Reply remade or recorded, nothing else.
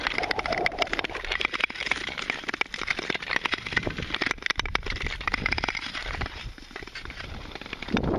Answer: recorded